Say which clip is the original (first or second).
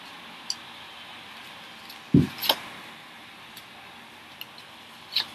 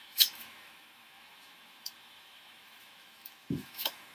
first